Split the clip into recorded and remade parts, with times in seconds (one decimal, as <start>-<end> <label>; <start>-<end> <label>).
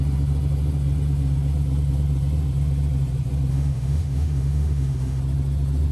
0.0-3.5 recorded; 3.5-5.2 remade; 5.2-5.9 recorded